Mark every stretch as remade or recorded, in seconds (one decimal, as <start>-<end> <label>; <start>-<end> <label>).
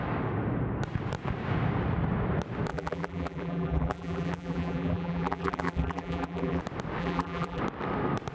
0.0-2.7 recorded; 2.7-6.6 remade; 6.6-7.0 recorded; 7.0-7.6 remade; 7.6-8.3 recorded